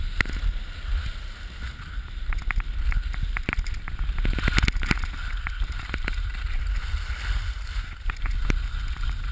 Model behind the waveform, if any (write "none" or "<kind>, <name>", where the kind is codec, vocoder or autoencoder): none